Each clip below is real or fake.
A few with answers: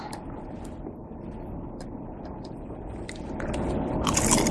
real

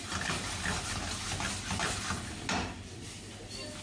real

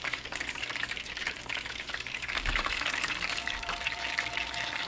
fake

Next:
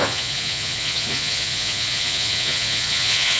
fake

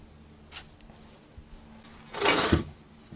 real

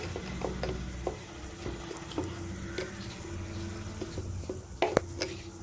real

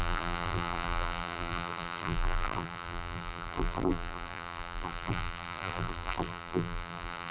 fake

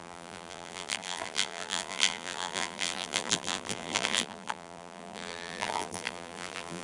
fake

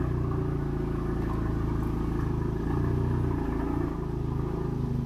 real